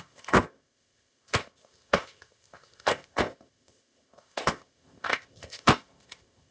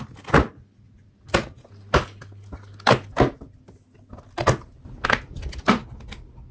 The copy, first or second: first